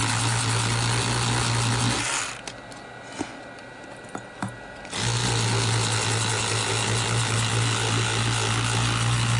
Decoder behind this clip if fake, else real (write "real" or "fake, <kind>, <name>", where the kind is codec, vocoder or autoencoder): real